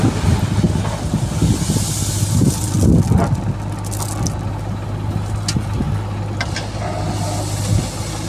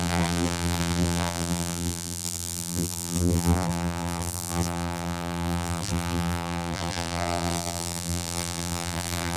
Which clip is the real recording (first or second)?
first